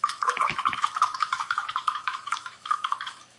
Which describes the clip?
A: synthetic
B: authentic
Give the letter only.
A